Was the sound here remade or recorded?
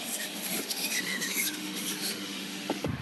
remade